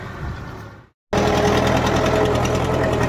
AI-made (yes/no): no